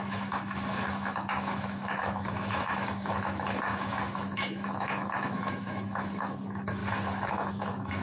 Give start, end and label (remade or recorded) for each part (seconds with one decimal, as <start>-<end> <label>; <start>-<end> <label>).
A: 0.0-8.0 remade